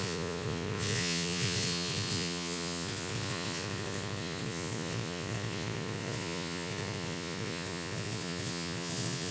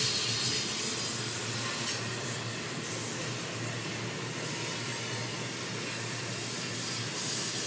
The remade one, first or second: first